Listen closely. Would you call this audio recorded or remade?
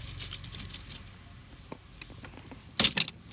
recorded